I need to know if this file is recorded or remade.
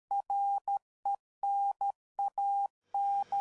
recorded